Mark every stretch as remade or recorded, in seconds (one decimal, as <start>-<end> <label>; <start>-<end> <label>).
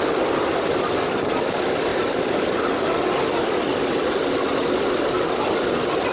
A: 0.0-6.1 recorded